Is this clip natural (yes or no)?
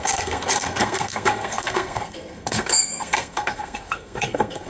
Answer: no